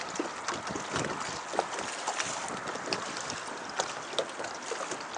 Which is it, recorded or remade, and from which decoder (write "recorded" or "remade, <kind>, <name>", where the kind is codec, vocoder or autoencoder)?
recorded